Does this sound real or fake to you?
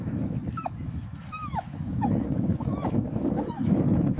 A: fake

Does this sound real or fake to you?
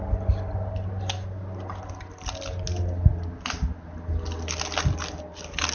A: real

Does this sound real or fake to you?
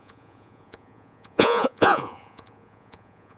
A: fake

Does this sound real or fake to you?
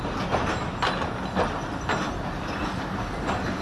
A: real